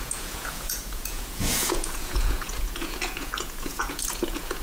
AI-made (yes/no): yes